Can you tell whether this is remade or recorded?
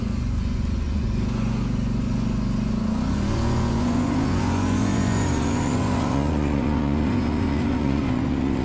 remade